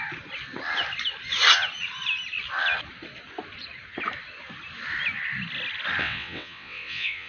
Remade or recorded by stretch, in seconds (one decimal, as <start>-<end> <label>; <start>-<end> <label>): 0.0-6.0 recorded; 6.0-7.3 remade